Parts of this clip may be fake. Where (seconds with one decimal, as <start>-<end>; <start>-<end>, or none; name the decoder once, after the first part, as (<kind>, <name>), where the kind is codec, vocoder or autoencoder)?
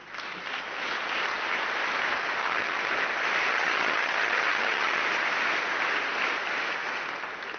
2.4-2.9 (vocoder, HiFi-GAN); 3.5-5.0